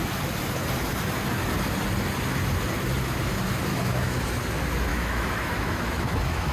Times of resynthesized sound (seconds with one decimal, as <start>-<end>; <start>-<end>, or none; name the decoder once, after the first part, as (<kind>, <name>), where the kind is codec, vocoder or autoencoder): 3.7-4.2 (autoencoder, DAC-VAE); 4.9-6.5